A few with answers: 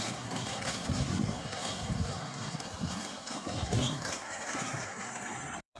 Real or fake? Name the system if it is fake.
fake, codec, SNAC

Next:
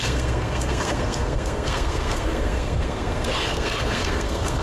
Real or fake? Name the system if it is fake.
fake, codec, SNAC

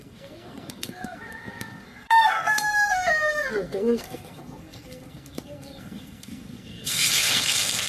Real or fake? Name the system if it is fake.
fake, codec, SNAC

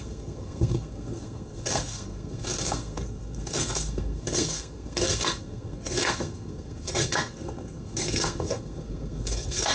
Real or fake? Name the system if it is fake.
fake, codec, SNAC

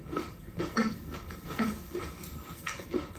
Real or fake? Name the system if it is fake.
fake, codec, SNAC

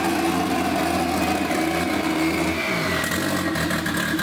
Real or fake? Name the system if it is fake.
real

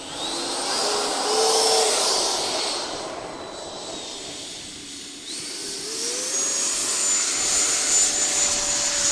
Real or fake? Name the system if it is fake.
real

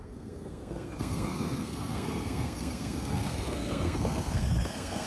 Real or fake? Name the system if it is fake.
fake, codec, SNAC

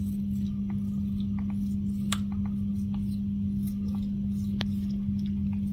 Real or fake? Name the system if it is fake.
real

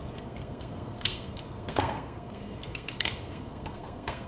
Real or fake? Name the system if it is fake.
fake, codec, SNAC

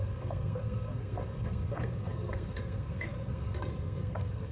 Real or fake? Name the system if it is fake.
fake, codec, SNAC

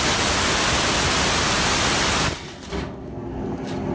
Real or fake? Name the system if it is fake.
real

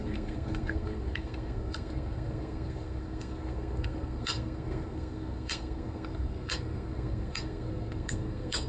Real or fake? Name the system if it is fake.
fake, codec, SNAC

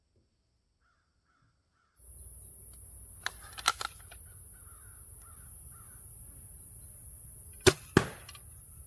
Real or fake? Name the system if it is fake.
real